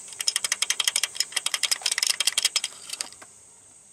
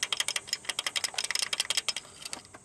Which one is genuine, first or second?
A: second